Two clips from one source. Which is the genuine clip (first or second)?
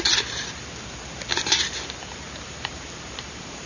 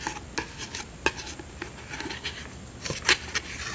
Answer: second